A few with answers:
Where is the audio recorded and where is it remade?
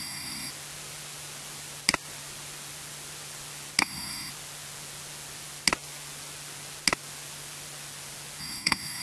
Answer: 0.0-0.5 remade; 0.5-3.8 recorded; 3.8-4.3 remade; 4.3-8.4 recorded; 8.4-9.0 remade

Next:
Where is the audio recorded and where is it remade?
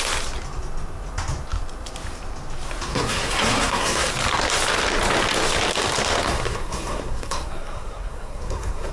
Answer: 0.0-2.9 recorded; 2.9-4.1 remade; 4.1-6.3 recorded; 6.3-8.9 remade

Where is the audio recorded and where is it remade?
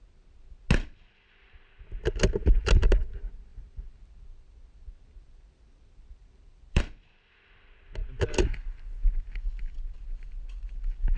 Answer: 0.0-3.5 recorded; 3.5-6.8 remade; 6.8-11.2 recorded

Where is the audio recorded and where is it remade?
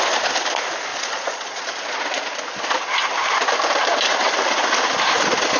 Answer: 0.0-0.9 recorded; 0.9-2.0 remade; 2.0-5.6 recorded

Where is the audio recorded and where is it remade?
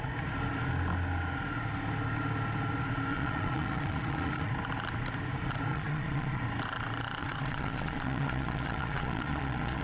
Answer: 0.0-3.1 recorded; 3.1-4.5 remade; 4.5-5.7 recorded; 5.7-6.4 remade; 6.4-7.2 recorded; 7.2-9.8 remade